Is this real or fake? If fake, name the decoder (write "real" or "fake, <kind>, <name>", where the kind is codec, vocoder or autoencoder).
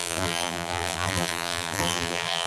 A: fake, vocoder, BigVGAN v2